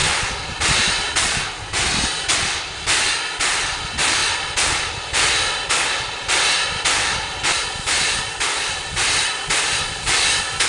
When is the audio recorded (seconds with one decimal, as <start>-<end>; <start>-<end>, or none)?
0.0-10.7